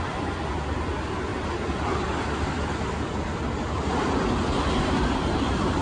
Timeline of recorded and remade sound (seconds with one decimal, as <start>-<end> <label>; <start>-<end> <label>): 0.0-5.8 recorded